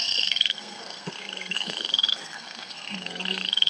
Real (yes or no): no